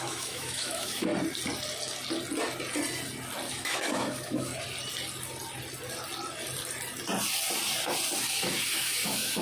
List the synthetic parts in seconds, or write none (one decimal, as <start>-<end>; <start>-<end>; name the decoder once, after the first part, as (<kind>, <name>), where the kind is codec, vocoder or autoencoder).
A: 0.0-1.1 (autoencoder, DAC-VAE); 3.5-4.5; 8.3-9.4